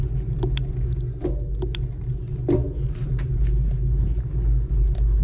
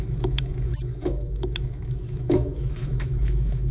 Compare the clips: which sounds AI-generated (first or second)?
second